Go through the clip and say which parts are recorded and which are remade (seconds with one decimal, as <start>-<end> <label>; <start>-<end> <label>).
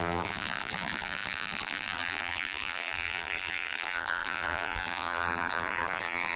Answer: 0.0-6.4 remade